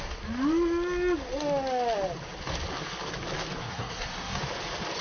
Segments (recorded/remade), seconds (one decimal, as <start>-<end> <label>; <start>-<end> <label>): 0.0-3.6 recorded; 3.6-4.4 remade; 4.4-5.0 recorded